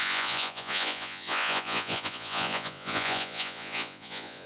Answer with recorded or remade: remade